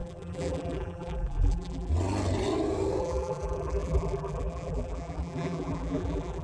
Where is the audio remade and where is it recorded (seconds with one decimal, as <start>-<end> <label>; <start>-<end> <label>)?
0.0-1.9 remade; 1.9-3.0 recorded; 3.0-6.4 remade